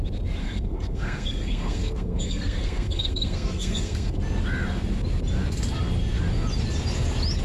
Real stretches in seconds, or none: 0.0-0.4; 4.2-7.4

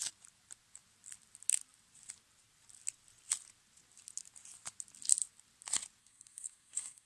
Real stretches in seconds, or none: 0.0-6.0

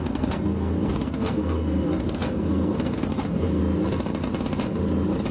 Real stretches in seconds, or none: 3.6-5.3

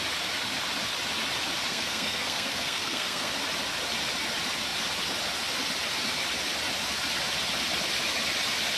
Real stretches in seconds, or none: 0.0-1.7; 3.3-8.8

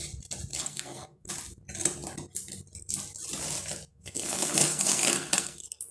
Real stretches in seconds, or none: 0.0-0.5; 1.3-3.9

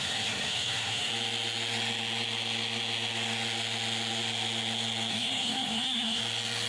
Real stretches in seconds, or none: 1.1-5.1; 6.2-6.7

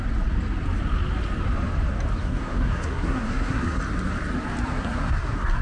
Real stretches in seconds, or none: 0.0-2.2; 3.8-4.7

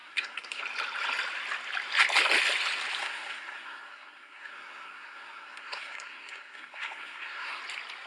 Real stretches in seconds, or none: 0.6-3.0; 7.6-8.1